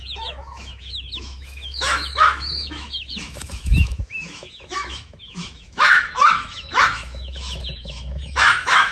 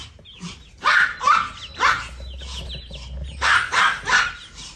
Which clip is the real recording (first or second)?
second